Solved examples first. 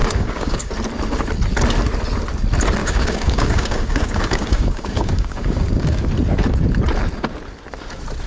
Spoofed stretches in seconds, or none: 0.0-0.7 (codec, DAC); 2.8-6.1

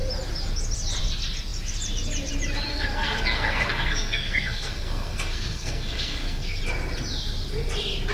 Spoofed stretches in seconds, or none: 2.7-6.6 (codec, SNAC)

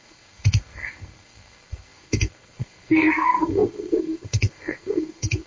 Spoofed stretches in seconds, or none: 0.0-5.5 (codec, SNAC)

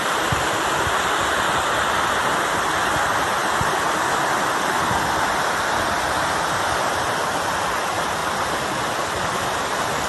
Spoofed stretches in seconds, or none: none

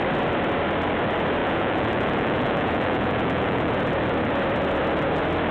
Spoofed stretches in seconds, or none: 1.4-3.7 (vocoder, Vocos)

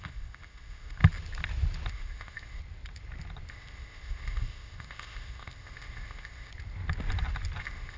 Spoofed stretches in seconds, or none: 0.0-1.0 (codec, ZipCodec); 1.9-2.6; 3.5-6.5; 7.6-8.0

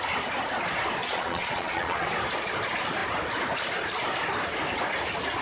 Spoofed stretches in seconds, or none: 1.0-2.1 (vocoder, Vocos)

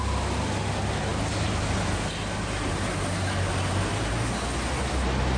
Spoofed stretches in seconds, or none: none